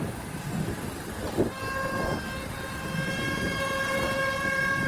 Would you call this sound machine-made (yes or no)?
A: no